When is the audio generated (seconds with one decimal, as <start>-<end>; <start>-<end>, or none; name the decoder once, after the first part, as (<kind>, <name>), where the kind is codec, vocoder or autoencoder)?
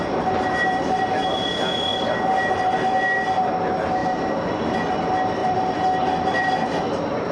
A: 5.4-6.8 (vocoder, BigVGAN v2)